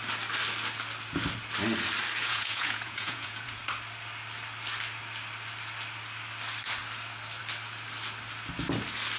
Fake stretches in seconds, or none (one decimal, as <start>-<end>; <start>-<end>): 2.2-3.6